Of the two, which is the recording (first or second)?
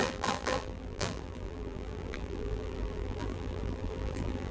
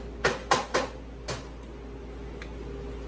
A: second